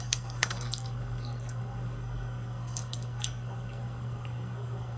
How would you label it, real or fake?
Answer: fake